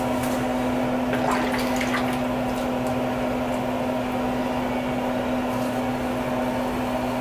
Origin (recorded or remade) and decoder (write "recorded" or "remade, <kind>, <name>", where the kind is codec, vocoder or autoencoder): recorded